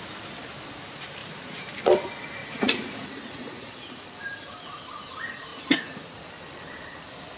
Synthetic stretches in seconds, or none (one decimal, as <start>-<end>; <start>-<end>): 1.2-1.7; 2.4-3.7; 5.5-6.2